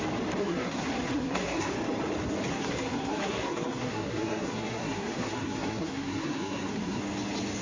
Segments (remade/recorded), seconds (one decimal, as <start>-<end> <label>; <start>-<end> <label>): 0.0-0.4 recorded; 0.4-1.7 remade; 1.7-2.5 recorded; 2.5-7.0 remade; 7.0-7.6 recorded